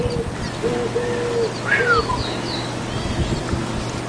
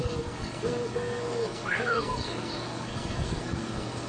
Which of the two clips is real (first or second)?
first